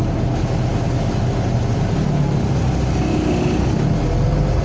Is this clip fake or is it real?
real